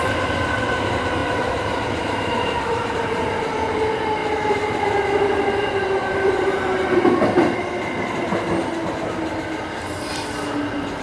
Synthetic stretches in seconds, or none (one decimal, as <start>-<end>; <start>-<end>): 1.2-3.3; 4.2-4.9; 6.0-7.0